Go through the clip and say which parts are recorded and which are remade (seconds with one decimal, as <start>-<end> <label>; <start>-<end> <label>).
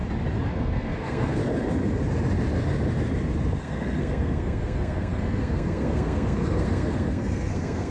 0.0-0.5 recorded; 0.5-1.4 remade; 1.4-3.6 recorded; 3.6-7.9 remade